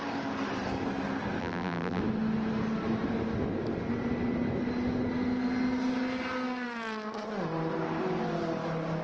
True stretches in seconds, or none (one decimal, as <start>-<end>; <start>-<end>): 0.0-1.4; 2.0-9.0